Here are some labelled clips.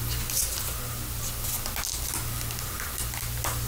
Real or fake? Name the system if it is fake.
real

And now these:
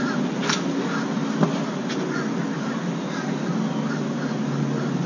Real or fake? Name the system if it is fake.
real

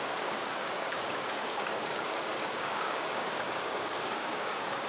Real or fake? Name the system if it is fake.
fake, codec, DAC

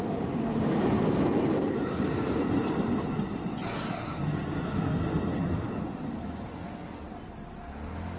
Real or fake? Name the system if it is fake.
real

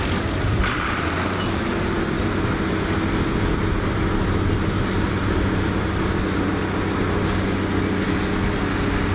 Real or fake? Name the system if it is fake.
real